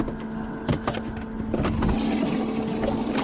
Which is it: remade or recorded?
recorded